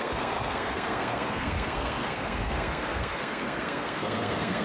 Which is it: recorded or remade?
remade